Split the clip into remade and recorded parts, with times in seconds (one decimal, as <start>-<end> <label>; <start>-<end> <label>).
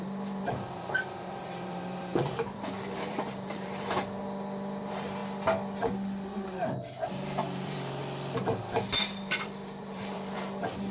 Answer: 0.0-5.2 remade; 5.2-7.1 recorded; 7.1-8.0 remade; 8.0-9.0 recorded; 9.0-10.9 remade